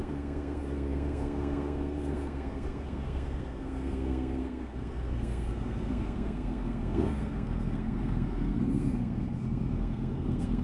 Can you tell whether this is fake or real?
fake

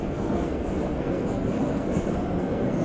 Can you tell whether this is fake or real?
fake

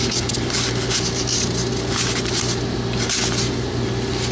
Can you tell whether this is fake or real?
real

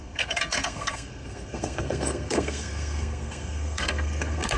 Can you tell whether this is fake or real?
fake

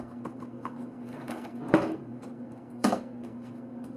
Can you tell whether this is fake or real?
fake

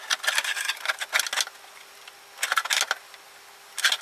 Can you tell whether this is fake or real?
real